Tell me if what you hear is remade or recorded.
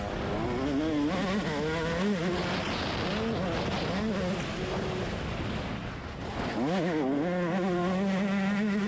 recorded